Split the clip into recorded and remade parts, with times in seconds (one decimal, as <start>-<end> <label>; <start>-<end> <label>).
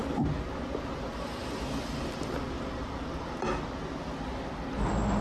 0.0-5.2 recorded